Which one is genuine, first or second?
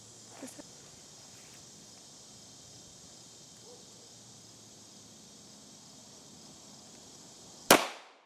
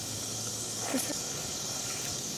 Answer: first